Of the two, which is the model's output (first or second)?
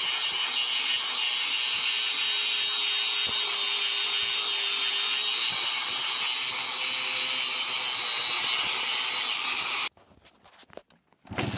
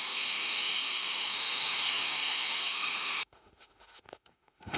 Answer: second